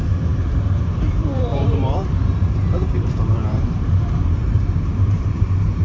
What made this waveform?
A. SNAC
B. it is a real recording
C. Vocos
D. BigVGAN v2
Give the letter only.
D